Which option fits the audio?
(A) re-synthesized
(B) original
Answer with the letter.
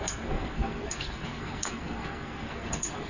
A